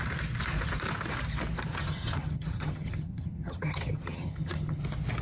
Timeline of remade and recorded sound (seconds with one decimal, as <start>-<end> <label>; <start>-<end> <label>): 0.0-1.7 recorded; 1.7-4.8 remade; 4.8-5.2 recorded